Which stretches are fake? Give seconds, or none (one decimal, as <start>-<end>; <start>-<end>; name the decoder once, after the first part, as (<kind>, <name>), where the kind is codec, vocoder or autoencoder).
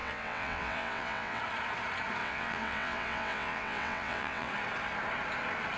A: 0.0-1.4 (vocoder, WaveNeXt); 2.2-4.5